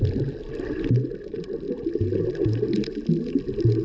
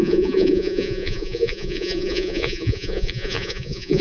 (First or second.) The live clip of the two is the first